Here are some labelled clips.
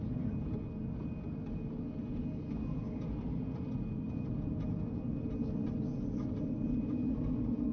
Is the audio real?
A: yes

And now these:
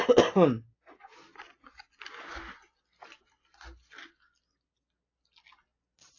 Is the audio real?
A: yes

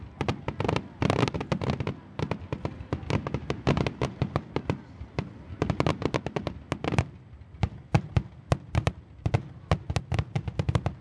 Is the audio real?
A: yes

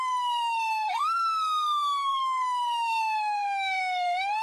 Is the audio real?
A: no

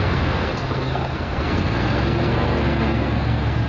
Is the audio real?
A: no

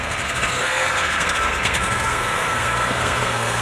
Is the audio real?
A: no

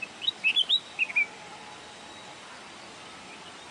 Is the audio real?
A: yes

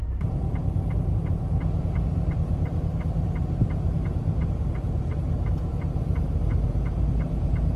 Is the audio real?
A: no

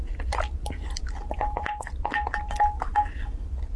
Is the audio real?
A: yes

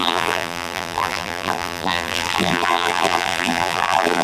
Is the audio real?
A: no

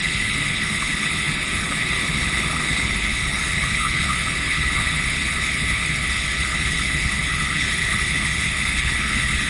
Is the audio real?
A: no